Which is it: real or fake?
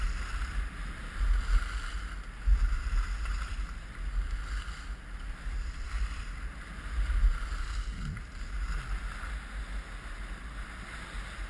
real